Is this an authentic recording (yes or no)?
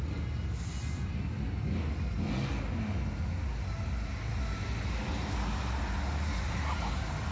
yes